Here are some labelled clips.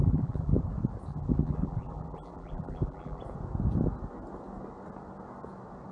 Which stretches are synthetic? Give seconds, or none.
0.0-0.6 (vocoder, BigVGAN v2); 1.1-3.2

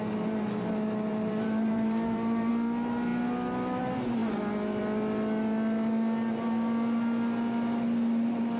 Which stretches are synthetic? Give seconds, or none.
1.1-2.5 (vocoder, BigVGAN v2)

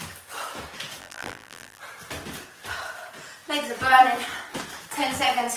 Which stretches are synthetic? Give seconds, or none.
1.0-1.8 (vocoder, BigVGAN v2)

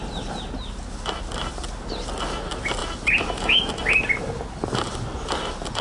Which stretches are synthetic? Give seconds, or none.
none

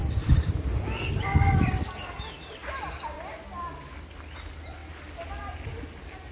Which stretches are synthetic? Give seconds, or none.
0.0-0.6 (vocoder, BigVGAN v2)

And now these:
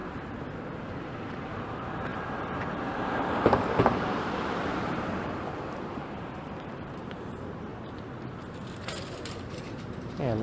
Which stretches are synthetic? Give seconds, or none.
0.0-7.7 (vocoder, BigVGAN v2); 9.3-10.4

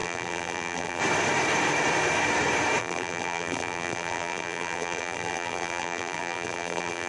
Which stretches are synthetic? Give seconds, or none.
0.0-1.0 (vocoder, BigVGAN v2); 2.8-7.1

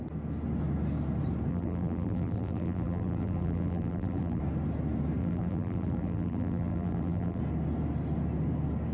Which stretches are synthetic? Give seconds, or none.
1.5-4.4 (vocoder, BigVGAN v2); 5.2-7.4